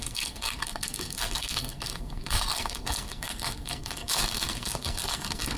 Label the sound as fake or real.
fake